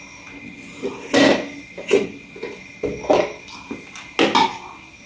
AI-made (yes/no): no